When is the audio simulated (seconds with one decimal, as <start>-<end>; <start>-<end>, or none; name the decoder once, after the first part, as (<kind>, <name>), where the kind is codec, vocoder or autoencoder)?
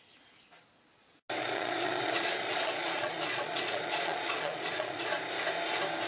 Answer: 1.4-5.1 (vocoder, Vocos)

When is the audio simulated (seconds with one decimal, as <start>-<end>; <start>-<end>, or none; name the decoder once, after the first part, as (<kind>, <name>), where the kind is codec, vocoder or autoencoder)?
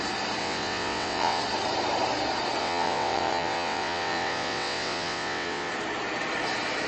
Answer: 0.4-1.4 (vocoder, WaveNeXt); 2.6-5.7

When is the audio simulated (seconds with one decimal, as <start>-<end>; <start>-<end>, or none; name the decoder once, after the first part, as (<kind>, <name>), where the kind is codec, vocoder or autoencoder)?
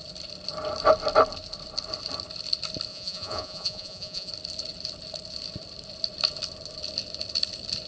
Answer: 2.9-4.3 (vocoder, Vocos)